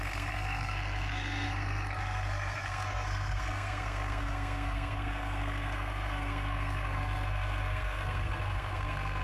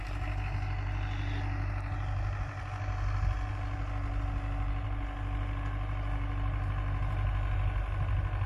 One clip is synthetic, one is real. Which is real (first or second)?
second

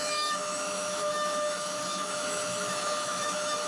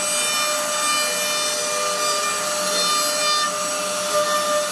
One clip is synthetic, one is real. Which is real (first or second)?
second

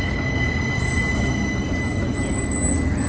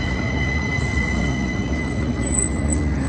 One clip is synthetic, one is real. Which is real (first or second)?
first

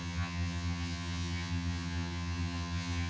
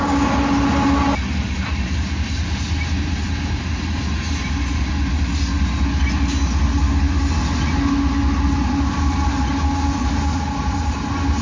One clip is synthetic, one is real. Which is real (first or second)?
second